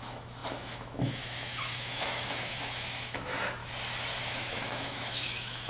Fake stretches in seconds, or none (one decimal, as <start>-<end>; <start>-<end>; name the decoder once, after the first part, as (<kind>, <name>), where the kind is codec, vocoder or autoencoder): 0.0-3.6 (autoencoder, DAC-VAE); 4.2-5.7